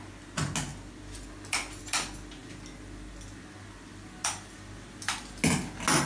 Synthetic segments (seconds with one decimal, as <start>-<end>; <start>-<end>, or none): none